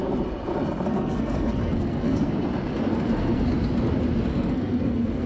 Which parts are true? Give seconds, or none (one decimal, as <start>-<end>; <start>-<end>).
0.0-0.9; 2.3-2.9; 3.4-4.3